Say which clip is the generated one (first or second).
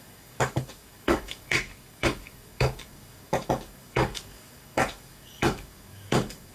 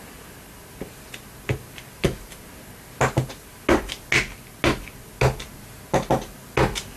first